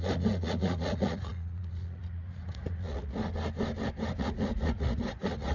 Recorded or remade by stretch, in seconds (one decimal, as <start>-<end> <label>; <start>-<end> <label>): 0.0-3.2 remade; 3.2-4.2 recorded; 4.2-5.5 remade